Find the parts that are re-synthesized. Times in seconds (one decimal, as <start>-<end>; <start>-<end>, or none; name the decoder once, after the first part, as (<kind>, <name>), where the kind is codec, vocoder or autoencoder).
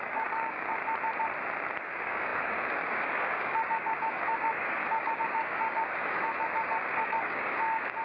0.0-0.8 (codec, DAC); 1.8-8.0